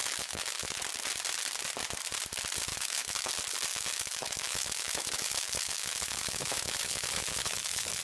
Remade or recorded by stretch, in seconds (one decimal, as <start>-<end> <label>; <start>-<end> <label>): 0.0-0.8 remade; 0.8-2.7 recorded; 2.7-3.3 remade; 3.3-3.7 recorded; 3.7-8.0 remade